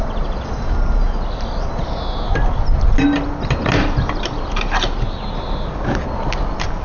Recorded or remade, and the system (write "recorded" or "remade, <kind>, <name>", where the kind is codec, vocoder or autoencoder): recorded